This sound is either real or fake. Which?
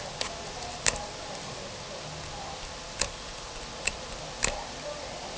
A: real